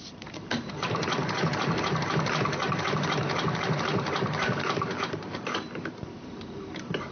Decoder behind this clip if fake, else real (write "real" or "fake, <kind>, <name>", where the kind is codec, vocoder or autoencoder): fake, vocoder, BigVGAN v2